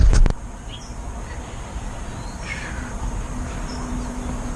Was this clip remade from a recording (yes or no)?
no